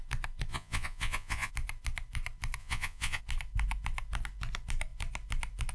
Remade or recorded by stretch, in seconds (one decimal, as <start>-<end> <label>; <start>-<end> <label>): 0.0-0.5 recorded; 0.5-1.5 remade; 1.5-2.6 recorded; 2.6-3.2 remade; 3.2-5.7 recorded